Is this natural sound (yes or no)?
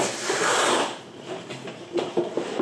no